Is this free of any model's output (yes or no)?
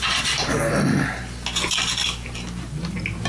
yes